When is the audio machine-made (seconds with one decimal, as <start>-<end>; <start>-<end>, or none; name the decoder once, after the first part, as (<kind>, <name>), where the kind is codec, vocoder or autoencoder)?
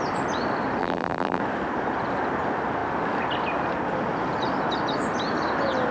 0.8-1.4 (vocoder, BigVGAN v2)